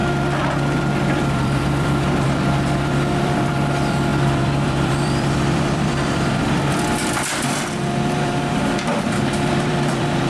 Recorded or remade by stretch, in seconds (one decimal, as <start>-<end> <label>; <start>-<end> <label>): 0.0-1.2 recorded; 1.2-10.3 remade